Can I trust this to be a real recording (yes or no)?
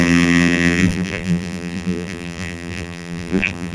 no